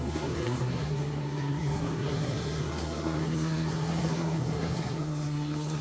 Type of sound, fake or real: fake